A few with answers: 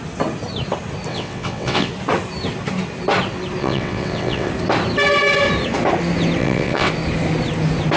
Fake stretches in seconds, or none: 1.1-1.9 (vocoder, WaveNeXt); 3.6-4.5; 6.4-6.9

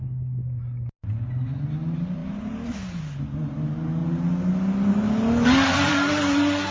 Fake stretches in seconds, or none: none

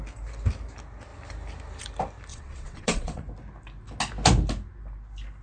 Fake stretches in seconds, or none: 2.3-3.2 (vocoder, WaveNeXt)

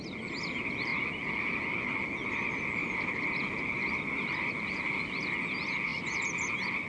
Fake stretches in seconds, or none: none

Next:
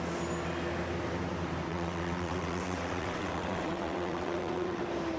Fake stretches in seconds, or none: 1.7-4.8 (vocoder, WaveNeXt)